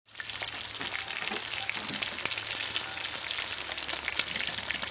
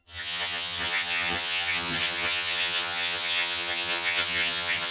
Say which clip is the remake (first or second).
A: second